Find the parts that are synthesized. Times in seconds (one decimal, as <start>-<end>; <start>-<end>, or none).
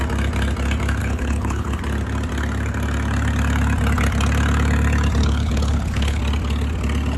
1.0-1.8; 5.2-6.2